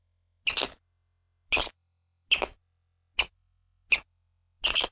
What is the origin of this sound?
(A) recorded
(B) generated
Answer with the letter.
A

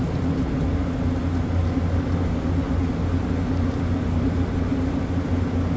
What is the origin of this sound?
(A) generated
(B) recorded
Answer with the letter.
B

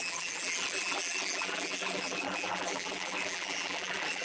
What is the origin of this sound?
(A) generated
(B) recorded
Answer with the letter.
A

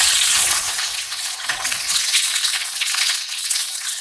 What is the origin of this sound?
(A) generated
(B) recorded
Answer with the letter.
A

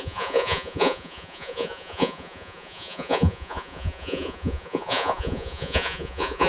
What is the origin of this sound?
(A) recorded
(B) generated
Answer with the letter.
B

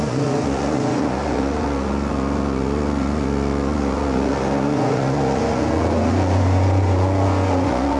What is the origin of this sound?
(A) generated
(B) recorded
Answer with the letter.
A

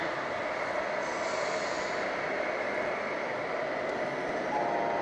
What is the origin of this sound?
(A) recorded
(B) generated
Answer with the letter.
A